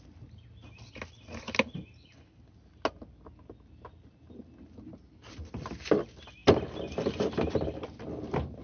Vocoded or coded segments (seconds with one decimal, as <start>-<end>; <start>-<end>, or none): none